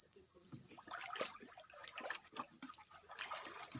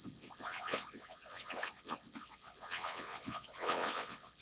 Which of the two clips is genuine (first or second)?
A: first